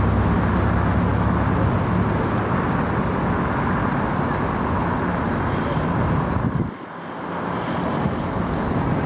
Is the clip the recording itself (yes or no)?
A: yes